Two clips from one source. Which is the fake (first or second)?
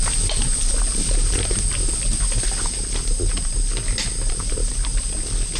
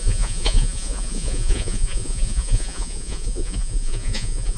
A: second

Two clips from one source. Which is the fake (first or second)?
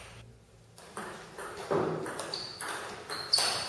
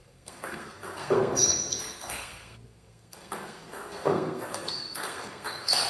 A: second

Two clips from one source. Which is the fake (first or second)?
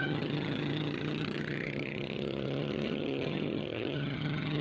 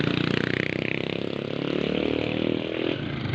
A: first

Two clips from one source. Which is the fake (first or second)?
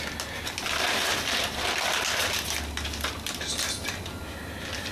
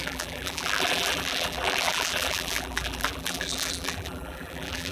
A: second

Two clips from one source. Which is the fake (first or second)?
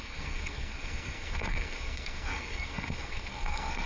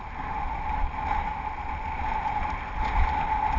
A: first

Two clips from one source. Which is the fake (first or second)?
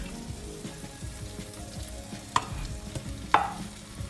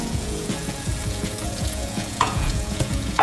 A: second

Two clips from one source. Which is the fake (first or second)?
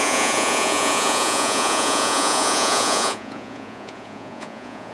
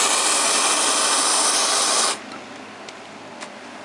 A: first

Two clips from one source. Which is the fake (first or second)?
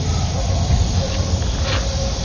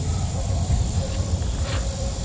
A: second